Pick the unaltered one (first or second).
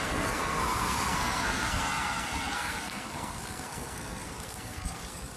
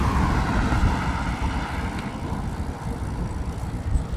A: second